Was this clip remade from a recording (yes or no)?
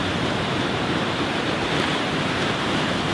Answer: yes